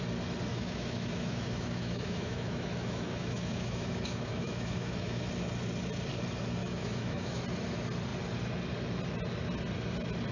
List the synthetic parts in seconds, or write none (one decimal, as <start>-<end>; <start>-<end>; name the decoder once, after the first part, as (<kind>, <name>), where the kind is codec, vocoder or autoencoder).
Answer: 0.5-5.3 (autoencoder, DAC-VAE); 6.6-7.4